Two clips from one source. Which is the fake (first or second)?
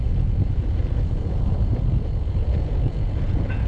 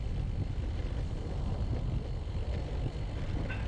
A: first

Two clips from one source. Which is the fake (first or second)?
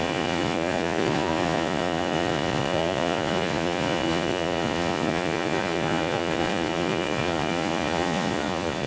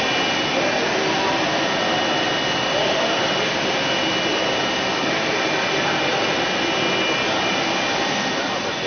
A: first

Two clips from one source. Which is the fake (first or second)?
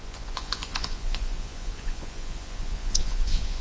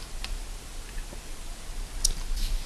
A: first